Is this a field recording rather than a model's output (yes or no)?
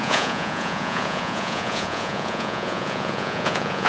no